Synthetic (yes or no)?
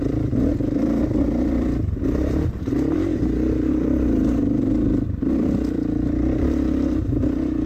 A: yes